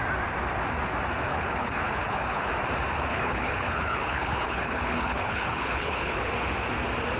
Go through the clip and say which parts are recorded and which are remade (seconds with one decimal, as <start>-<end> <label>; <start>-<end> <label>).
0.0-1.3 recorded; 1.3-2.5 remade; 2.5-3.1 recorded; 3.1-6.3 remade; 6.3-7.2 recorded